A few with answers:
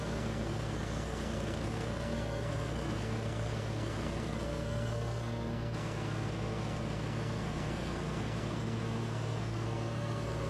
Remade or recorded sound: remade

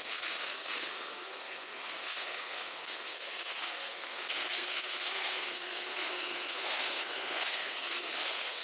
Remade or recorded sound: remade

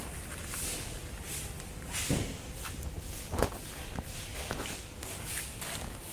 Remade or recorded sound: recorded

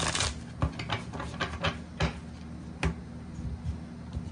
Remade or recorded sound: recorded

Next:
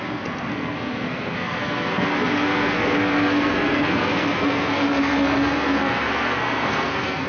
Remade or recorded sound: remade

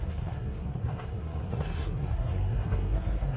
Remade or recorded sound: remade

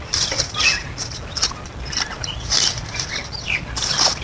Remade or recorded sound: recorded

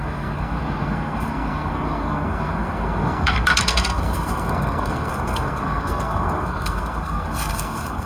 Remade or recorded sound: remade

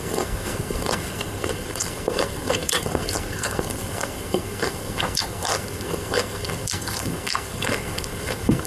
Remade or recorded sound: remade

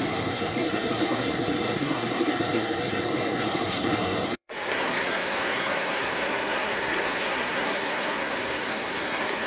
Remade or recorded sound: remade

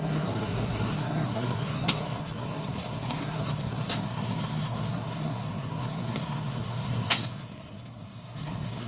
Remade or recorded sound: remade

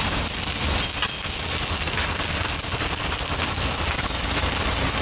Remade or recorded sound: recorded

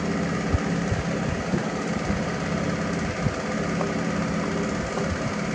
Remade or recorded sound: recorded